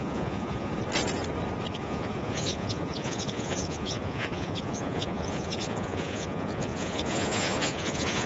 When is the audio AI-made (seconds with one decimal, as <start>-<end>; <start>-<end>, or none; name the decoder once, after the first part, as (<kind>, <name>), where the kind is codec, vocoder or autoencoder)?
0.0-0.7 (vocoder, Vocos); 1.7-8.3